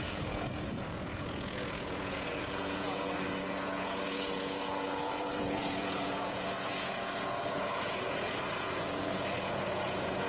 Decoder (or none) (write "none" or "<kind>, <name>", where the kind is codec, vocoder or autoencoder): vocoder, Vocos